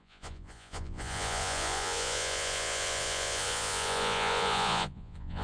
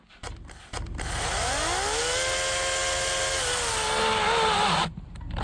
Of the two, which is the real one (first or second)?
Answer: second